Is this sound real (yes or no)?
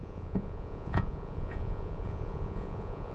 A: no